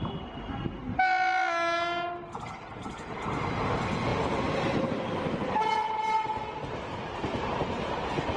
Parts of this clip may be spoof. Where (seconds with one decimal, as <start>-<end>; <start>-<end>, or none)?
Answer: none